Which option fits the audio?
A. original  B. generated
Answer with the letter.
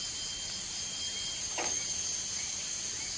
A